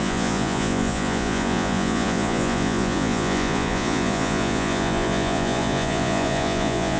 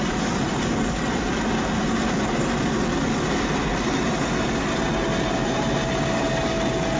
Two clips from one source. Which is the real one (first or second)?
second